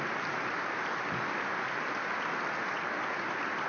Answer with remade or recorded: recorded